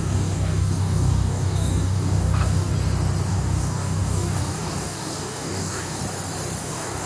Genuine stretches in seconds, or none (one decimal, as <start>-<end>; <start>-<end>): 2.7-3.3; 6.0-6.6